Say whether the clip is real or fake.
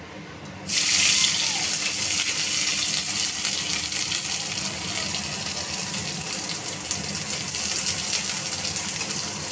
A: real